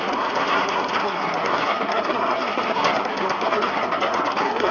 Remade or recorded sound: remade